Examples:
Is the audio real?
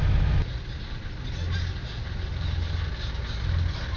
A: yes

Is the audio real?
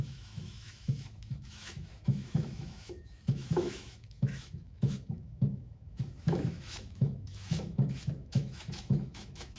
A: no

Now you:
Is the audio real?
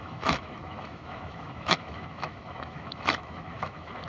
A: no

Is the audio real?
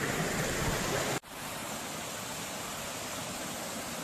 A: yes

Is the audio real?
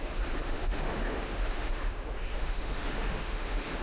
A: no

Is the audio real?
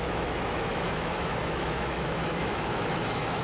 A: no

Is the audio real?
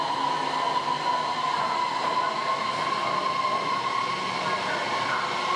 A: yes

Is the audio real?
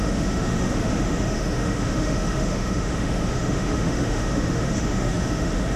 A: no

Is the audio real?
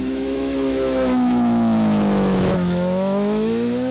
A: no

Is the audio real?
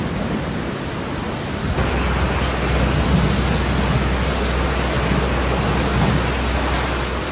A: yes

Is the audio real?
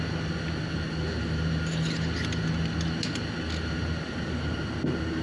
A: yes